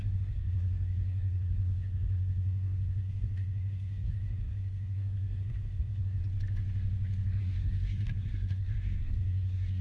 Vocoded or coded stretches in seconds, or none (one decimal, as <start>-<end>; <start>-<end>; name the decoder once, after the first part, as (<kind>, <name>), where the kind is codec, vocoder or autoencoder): 0.0-6.2 (codec, SNAC); 7.4-9.8